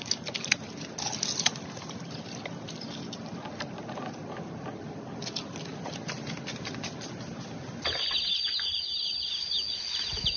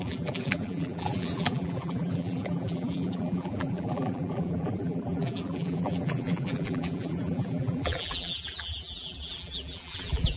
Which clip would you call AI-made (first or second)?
second